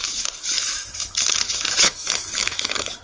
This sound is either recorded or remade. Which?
remade